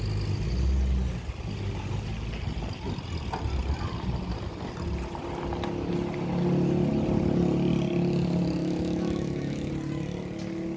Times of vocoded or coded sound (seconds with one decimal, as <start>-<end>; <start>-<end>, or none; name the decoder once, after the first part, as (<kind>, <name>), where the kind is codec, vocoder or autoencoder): 8.6-9.7 (autoencoder, DAC-VAE)